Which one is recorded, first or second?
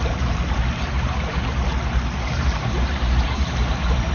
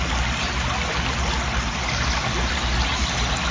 second